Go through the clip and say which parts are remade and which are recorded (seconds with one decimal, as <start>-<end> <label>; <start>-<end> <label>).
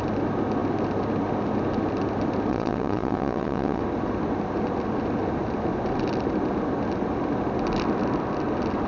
0.0-2.5 recorded; 2.5-3.8 remade; 3.8-8.9 recorded